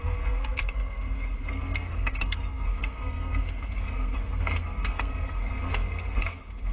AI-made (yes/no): yes